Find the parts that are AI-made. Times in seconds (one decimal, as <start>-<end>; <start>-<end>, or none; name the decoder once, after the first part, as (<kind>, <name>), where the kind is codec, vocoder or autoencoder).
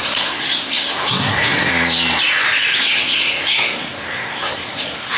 0.0-1.7 (codec, SNAC); 2.8-5.2